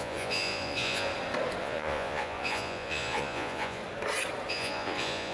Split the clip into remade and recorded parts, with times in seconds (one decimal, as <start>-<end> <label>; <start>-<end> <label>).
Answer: 0.0-1.1 remade; 1.1-1.6 recorded; 1.6-3.8 remade; 3.8-4.5 recorded; 4.5-5.3 remade